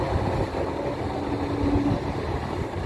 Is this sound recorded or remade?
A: recorded